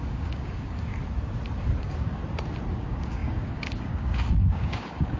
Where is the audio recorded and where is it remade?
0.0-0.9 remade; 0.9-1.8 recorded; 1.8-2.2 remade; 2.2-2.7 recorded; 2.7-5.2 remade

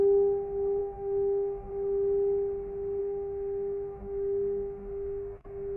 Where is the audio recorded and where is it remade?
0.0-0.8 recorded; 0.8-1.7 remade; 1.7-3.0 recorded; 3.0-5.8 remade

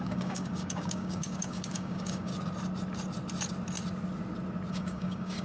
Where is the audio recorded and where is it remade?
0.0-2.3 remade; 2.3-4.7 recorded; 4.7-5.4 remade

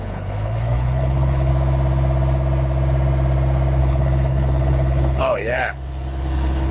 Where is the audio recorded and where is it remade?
0.0-1.5 remade; 1.5-3.8 recorded; 3.8-6.7 remade

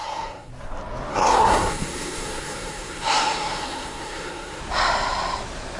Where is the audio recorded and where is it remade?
0.0-0.5 remade; 0.5-1.1 recorded; 1.1-4.6 remade; 4.6-5.8 recorded

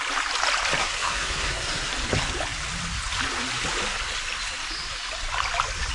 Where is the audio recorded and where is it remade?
0.0-0.8 recorded; 0.8-1.9 remade; 1.9-5.9 recorded

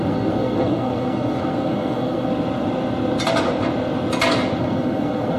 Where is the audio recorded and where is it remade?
0.0-2.3 remade; 2.3-4.6 recorded; 4.6-5.4 remade